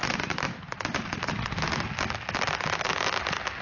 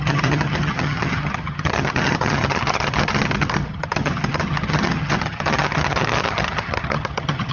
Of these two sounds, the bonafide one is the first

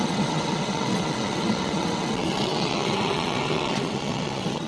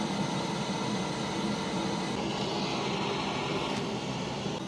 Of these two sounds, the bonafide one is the second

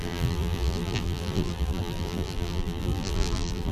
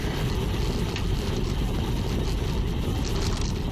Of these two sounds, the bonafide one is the second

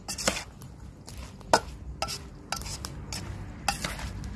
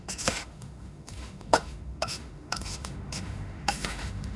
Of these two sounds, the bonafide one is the first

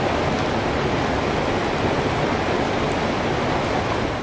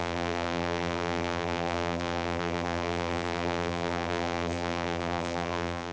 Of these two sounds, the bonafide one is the first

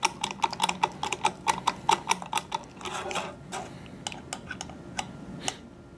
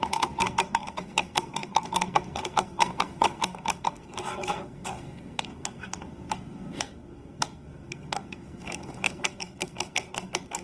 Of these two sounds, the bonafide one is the first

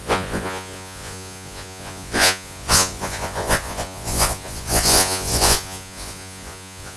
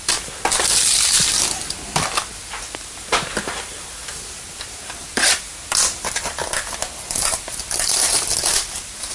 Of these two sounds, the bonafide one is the second